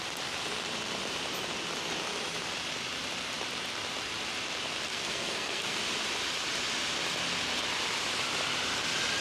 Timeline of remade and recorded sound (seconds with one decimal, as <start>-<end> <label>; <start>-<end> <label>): 0.0-4.9 recorded; 4.9-5.8 remade; 5.8-9.2 recorded